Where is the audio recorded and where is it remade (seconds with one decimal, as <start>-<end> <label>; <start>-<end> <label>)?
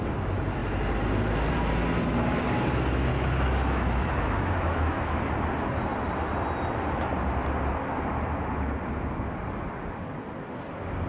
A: 0.0-3.1 recorded; 3.1-5.2 remade; 5.2-11.1 recorded